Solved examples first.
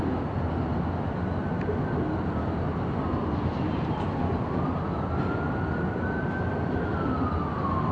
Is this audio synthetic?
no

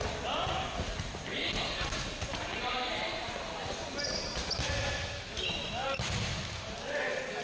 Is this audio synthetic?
no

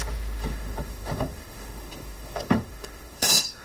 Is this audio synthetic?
yes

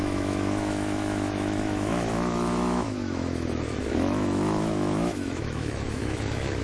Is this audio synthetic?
yes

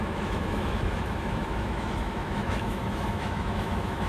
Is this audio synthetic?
yes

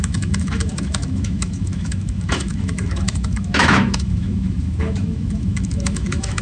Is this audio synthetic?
yes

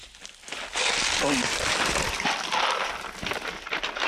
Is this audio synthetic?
no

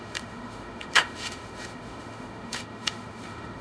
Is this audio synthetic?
yes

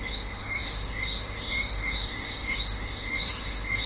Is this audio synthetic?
yes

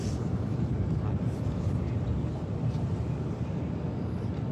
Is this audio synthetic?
no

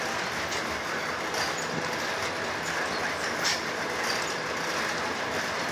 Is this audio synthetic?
no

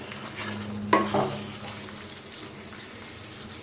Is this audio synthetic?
no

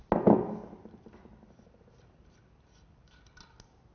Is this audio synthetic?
no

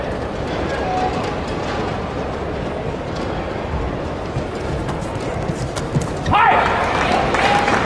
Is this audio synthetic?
no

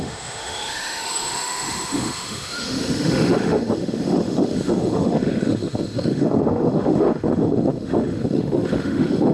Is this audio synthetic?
yes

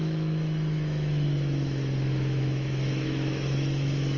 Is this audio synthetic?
yes